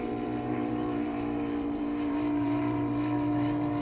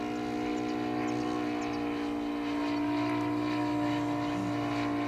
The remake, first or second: first